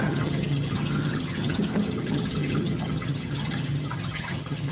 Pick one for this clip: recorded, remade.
remade